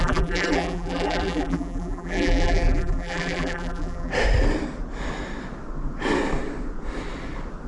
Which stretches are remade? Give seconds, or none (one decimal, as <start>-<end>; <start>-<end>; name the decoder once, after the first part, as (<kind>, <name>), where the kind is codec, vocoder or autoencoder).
0.0-4.1 (vocoder, BigVGAN v2)